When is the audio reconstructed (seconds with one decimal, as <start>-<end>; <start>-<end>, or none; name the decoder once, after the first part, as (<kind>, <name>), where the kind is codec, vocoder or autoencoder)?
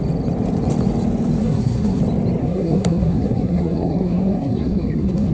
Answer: 1.4-2.0 (codec, SNAC); 2.4-5.3